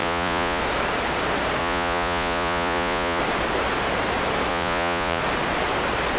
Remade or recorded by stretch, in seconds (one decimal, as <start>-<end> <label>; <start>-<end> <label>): 0.0-0.6 remade; 0.6-1.6 recorded; 1.6-3.2 remade; 3.2-4.5 recorded; 4.5-5.2 remade; 5.2-6.2 recorded